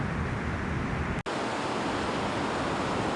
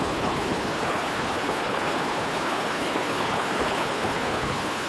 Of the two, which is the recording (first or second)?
first